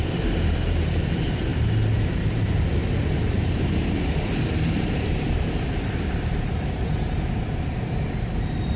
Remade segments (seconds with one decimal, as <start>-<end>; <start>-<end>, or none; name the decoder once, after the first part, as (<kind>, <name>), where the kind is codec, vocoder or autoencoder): 0.0-1.5 (vocoder, BigVGAN v2); 2.0-8.8

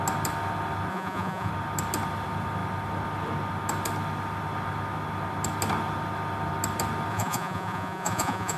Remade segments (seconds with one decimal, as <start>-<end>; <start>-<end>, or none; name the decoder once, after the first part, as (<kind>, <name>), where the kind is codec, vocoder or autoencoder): 0.9-1.5 (vocoder, Vocos); 7.1-8.6

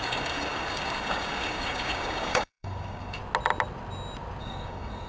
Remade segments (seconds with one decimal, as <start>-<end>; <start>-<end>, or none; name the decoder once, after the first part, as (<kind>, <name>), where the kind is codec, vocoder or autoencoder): 0.0-3.2 (codec, DAC); 4.4-5.1

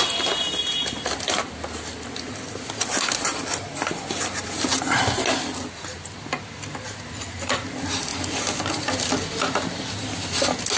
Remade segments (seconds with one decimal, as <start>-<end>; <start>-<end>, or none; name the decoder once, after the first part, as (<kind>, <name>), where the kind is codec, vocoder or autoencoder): 3.3-4.7 (vocoder, BigVGAN v2)

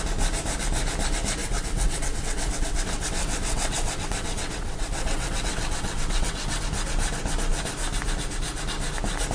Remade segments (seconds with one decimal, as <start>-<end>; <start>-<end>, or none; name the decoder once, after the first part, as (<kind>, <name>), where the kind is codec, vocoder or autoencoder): 1.4-6.6 (vocoder, WaveNeXt)